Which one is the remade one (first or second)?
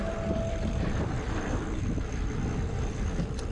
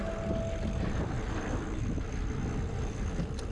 first